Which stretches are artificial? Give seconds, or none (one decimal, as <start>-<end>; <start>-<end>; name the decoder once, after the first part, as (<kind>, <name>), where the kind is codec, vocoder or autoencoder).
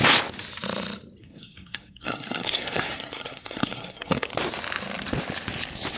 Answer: 1.2-4.3 (codec, SNAC)